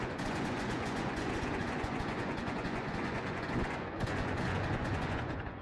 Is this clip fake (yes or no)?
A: yes